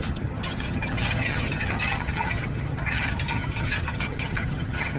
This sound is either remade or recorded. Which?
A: remade